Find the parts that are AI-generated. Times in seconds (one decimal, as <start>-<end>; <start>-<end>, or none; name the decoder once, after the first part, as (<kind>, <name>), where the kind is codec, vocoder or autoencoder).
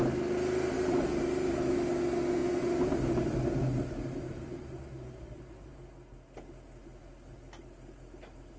none